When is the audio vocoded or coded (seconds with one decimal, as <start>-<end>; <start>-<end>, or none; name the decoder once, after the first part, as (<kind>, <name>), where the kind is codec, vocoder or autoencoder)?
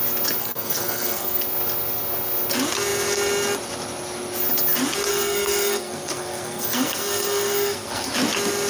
0.4-1.4 (codec, SNAC); 5.1-8.1